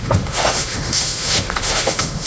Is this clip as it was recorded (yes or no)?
no